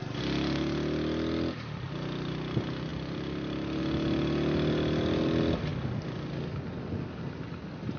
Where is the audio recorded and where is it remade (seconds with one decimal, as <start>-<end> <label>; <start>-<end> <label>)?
0.0-2.9 recorded; 2.9-3.8 remade; 3.8-8.0 recorded